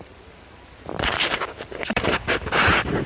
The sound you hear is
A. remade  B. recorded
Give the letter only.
A